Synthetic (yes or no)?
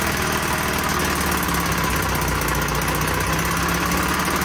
no